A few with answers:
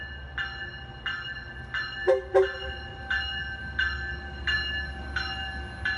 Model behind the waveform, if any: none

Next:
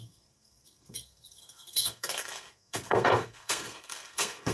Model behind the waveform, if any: codec, SNAC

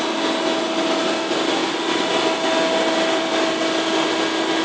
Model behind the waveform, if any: none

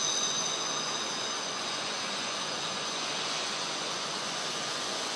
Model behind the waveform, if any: vocoder, Vocos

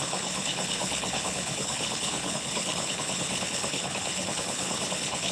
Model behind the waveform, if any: codec, HILCodec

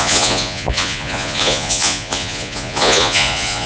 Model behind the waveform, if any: vocoder, Vocos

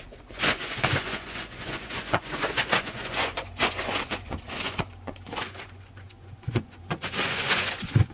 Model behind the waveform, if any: vocoder, Vocos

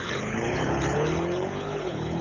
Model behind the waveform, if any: codec, HILCodec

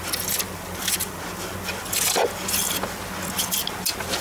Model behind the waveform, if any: none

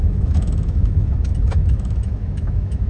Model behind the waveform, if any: autoencoder, DAC-VAE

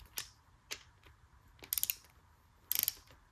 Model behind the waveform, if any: none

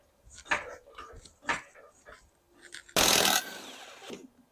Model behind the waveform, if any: none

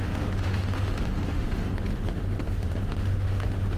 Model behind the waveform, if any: autoencoder, DAC-VAE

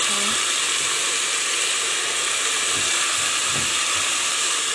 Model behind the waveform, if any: none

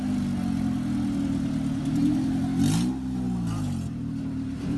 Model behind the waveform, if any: none